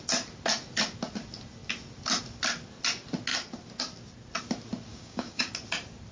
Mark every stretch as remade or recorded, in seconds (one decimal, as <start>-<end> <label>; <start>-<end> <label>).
0.0-4.9 recorded; 4.9-5.5 remade; 5.5-6.1 recorded